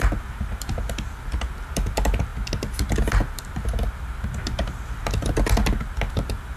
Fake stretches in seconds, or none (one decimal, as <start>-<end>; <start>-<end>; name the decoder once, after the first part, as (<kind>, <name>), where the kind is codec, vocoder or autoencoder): none